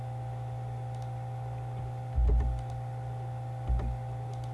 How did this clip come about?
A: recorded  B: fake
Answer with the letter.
A